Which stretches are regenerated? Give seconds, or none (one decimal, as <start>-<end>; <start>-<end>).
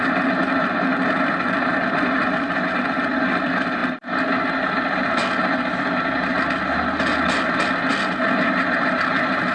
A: none